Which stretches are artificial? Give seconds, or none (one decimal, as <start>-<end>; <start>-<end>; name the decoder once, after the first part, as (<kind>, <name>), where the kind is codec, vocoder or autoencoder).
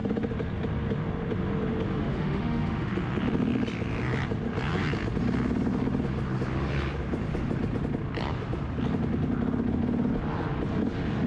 2.0-2.9 (autoencoder, DAC-VAE)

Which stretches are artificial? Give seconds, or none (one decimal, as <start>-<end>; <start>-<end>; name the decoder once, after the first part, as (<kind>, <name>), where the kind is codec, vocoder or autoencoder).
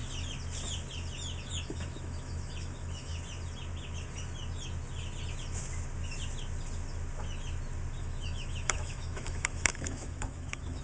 1.5-3.1 (autoencoder, DAC-VAE); 8.0-10.8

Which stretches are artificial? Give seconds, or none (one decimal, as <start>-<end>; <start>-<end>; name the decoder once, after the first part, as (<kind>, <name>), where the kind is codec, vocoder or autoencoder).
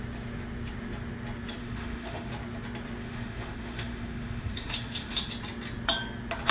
1.6-2.3 (autoencoder, DAC-VAE); 3.0-5.3